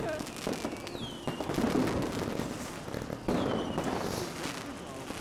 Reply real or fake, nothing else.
real